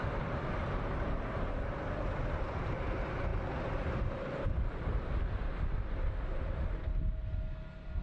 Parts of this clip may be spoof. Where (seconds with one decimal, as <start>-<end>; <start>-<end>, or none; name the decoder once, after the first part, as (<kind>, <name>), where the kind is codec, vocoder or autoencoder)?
none

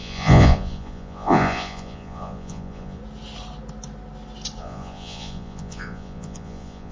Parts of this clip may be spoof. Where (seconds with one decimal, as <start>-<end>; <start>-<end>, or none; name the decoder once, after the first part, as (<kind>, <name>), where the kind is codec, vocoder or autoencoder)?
0.0-3.0 (vocoder, Vocos); 4.6-6.9

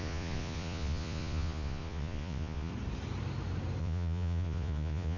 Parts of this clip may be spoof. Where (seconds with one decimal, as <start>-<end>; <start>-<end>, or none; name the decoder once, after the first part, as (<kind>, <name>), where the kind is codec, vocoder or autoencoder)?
0.0-2.7 (vocoder, Vocos); 3.8-5.2

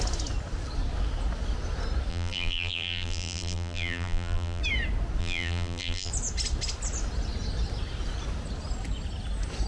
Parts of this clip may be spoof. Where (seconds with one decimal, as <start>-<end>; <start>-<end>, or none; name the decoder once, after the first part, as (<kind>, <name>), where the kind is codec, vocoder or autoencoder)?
2.1-4.6 (vocoder, BigVGAN v2); 5.2-6.1